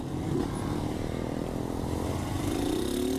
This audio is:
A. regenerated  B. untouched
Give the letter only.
B